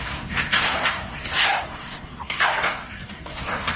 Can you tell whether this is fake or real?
fake